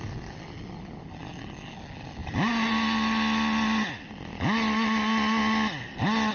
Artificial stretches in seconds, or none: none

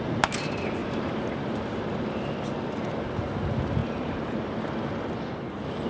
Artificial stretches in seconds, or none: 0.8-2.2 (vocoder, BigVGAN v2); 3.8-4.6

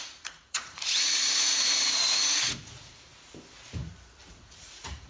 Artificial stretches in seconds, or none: 0.0-3.1 (vocoder, Vocos); 4.3-5.1